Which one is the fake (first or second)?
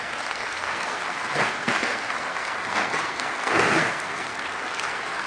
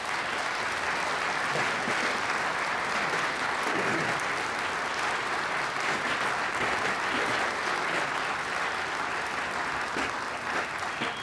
first